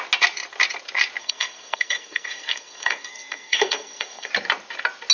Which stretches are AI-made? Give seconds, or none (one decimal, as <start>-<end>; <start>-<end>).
1.2-4.3